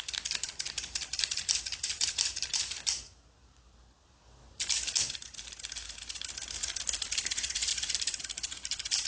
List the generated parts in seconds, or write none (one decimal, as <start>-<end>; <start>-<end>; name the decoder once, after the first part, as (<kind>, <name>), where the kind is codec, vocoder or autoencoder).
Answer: none

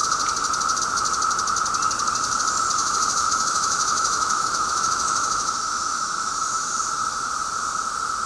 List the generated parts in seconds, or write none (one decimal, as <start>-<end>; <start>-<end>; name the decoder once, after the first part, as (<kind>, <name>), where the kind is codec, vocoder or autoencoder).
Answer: 2.8-6.8 (autoencoder, DAC-VAE)

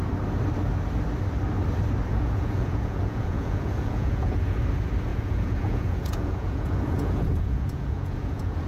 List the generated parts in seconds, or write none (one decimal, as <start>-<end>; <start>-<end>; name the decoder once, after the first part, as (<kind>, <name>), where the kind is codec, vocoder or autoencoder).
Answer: 2.1-4.6 (vocoder, Vocos); 5.1-8.7

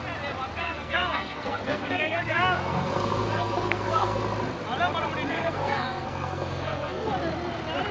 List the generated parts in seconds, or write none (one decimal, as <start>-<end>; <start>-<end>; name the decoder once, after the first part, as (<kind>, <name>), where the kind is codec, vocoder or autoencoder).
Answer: 0.6-4.2 (codec, SNAC); 5.3-7.1